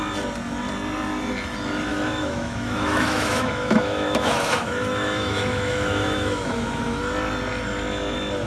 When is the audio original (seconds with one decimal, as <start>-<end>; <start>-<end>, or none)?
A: 0.0-1.9; 7.0-8.5